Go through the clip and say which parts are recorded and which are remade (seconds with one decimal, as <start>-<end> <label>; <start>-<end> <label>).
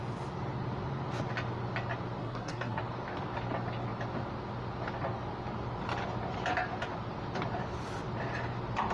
0.0-2.2 recorded; 2.2-2.8 remade; 2.8-8.9 recorded